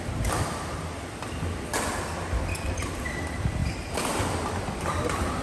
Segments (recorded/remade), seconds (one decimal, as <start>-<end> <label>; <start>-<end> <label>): 0.0-5.4 remade